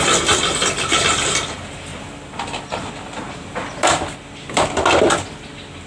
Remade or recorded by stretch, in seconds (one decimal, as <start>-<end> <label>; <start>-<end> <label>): 0.0-5.9 recorded